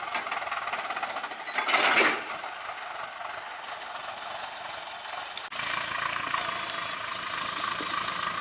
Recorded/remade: recorded